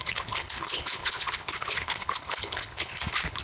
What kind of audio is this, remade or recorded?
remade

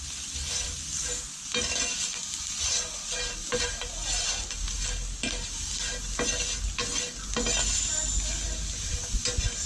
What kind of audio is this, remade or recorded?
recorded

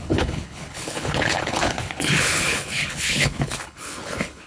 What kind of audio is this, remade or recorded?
remade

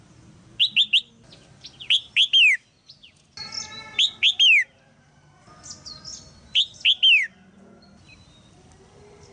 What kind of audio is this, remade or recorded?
recorded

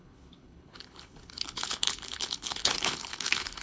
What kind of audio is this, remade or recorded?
remade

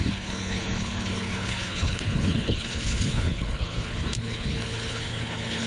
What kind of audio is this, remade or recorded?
remade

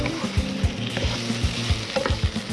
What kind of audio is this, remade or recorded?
recorded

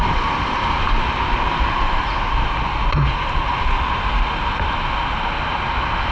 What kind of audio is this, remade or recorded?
recorded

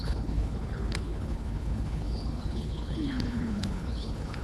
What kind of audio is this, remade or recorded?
remade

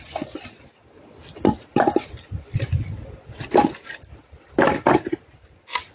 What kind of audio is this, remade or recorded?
recorded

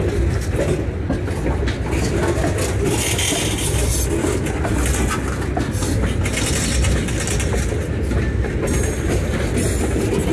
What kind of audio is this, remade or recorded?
recorded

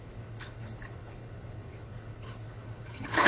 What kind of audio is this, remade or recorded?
remade